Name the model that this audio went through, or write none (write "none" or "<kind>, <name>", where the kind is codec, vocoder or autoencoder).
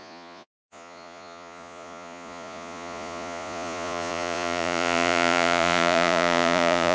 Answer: vocoder, Vocos